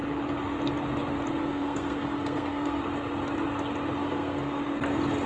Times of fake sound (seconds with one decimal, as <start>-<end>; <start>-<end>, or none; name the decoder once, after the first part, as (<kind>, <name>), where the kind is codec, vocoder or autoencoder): 1.4-2.8 (codec, SNAC); 4.0-4.6

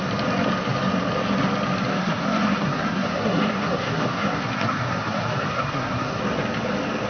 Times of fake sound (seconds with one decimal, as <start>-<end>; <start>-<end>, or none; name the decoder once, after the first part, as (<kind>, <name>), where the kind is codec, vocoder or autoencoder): 1.9-6.2 (codec, SNAC)

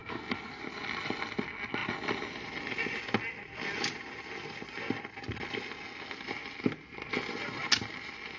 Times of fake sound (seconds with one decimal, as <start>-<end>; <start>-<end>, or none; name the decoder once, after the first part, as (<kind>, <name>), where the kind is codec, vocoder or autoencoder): 0.0-0.6 (codec, SNAC)

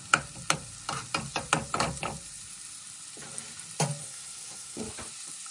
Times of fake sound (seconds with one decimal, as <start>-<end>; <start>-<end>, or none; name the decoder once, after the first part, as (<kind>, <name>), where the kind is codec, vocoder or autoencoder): 4.0-4.8 (codec, SNAC)

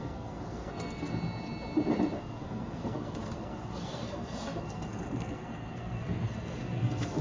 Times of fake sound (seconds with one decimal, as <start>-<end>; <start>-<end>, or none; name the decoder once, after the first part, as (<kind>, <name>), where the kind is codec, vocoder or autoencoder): 0.0-1.1 (codec, SNAC); 2.2-7.2

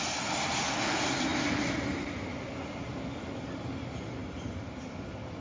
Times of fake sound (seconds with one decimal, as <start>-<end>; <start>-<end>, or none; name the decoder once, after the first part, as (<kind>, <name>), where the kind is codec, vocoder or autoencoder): none